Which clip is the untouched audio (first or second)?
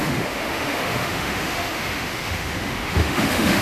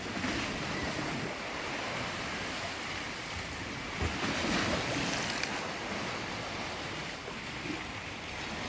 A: second